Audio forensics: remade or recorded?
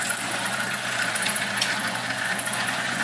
remade